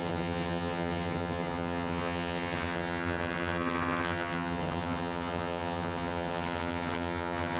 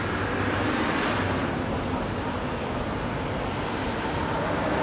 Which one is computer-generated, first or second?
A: first